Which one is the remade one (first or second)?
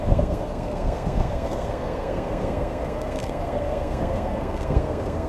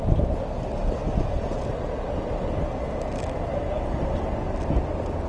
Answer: first